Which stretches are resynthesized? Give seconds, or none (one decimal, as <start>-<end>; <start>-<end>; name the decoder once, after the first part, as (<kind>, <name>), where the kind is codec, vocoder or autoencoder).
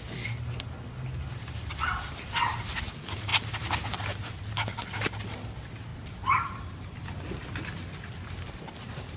none